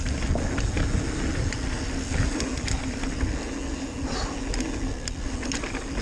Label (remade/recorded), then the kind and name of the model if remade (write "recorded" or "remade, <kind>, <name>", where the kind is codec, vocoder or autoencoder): recorded